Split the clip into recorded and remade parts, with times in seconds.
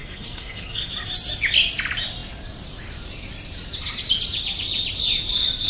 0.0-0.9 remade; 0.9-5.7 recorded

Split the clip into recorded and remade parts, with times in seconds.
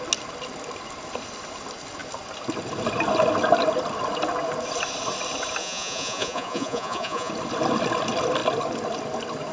0.0-5.6 recorded; 5.6-7.3 remade; 7.3-9.5 recorded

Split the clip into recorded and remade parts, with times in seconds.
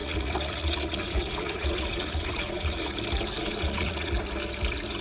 0.0-3.0 remade; 3.0-3.4 recorded; 3.4-4.1 remade; 4.1-5.0 recorded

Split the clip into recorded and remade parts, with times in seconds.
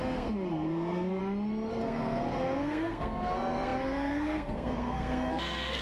0.0-1.2 remade; 1.2-1.7 recorded; 1.7-5.8 remade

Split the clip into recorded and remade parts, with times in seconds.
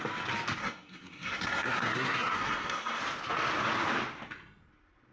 0.0-0.6 recorded; 0.6-3.0 remade; 3.0-5.1 recorded